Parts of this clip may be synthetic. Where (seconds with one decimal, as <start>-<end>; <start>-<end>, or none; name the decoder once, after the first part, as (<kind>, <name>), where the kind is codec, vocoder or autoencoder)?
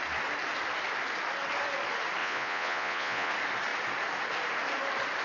2.2-3.3 (vocoder, Vocos)